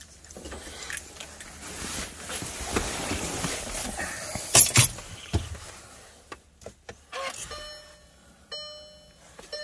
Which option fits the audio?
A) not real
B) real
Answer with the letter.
B